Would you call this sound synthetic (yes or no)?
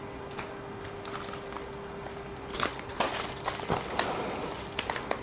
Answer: no